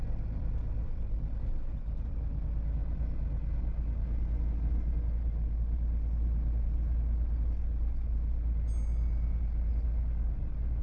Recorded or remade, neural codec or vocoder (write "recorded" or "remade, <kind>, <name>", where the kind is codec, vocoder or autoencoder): recorded